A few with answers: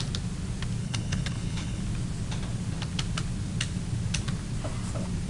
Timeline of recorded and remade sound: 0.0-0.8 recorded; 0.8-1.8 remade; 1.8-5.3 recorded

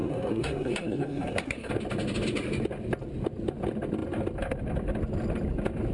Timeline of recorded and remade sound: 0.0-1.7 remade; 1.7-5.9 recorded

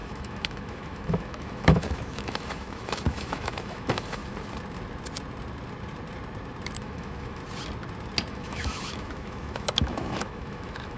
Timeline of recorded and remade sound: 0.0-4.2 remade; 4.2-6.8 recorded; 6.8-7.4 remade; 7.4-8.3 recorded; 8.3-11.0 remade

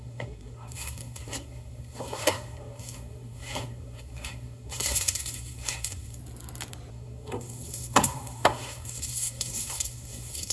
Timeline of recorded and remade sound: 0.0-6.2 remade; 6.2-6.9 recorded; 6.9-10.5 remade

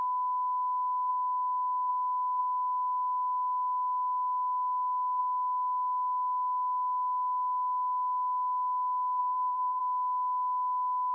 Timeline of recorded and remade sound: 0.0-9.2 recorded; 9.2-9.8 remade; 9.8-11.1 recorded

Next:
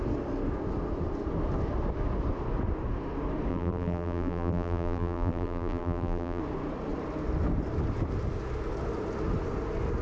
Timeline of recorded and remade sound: 0.0-3.5 recorded; 3.5-6.4 remade; 6.4-10.0 recorded